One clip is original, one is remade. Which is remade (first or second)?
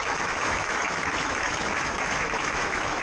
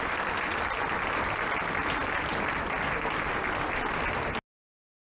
first